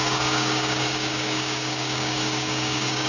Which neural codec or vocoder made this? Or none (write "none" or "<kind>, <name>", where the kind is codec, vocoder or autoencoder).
codec, DAC